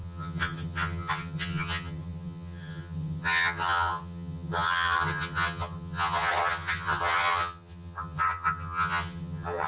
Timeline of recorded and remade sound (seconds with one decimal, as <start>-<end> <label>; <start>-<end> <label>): 0.0-9.7 remade